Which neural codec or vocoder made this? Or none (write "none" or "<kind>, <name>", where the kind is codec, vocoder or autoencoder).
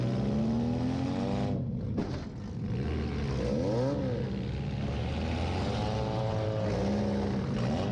none